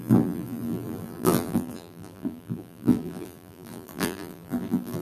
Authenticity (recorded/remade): remade